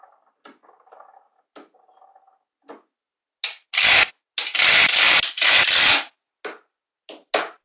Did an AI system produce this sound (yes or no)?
no